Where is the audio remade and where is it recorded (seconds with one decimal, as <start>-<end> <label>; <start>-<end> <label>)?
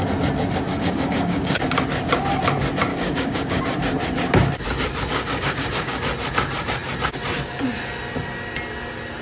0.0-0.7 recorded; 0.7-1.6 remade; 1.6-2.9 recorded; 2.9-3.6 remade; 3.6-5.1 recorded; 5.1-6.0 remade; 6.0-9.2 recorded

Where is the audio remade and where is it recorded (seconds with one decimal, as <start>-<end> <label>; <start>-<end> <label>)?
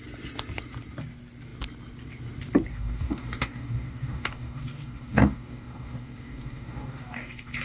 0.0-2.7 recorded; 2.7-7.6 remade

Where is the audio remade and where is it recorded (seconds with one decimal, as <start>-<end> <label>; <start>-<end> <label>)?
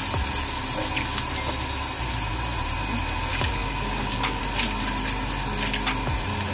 0.0-3.3 recorded; 3.3-4.4 remade; 4.4-6.5 recorded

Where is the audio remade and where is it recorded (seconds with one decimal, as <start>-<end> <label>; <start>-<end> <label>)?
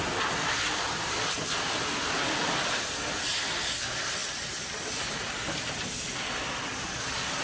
0.0-7.4 recorded